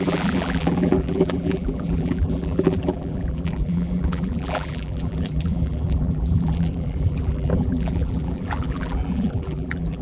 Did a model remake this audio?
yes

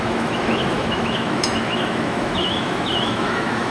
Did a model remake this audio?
yes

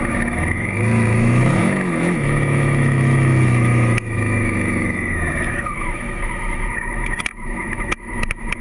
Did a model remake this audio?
yes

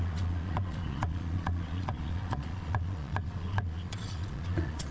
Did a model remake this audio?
yes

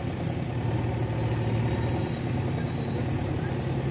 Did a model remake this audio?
no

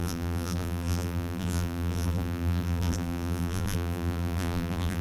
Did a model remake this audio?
yes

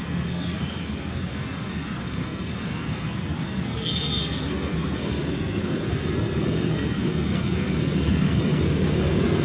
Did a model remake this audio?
yes